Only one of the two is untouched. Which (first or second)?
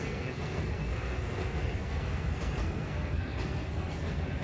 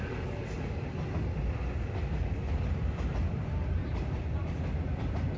second